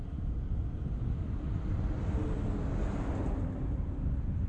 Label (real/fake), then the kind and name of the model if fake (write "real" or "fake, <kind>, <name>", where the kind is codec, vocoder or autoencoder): real